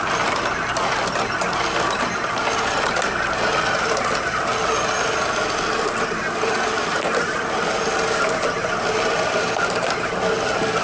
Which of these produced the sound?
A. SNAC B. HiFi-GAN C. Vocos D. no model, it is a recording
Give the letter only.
D